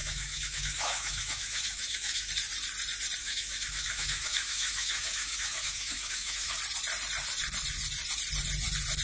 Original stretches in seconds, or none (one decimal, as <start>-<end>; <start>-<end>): 2.3-3.2; 6.6-9.0